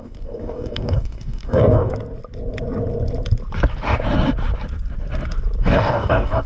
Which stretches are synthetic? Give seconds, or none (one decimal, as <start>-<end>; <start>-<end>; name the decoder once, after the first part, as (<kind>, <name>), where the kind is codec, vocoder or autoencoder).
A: 0.0-1.9 (codec, DAC); 5.6-6.5